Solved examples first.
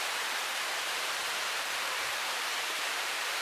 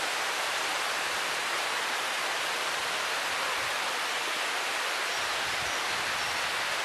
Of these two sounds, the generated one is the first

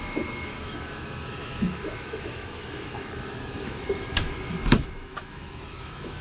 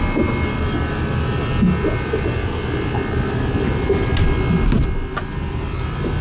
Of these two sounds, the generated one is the first